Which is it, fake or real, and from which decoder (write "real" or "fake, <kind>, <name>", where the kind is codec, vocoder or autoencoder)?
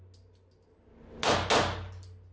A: real